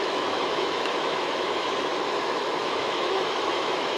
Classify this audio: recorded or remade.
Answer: remade